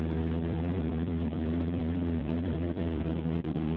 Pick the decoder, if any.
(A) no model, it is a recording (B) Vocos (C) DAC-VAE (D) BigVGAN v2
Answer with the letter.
B